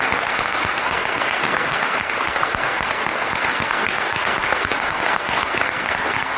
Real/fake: fake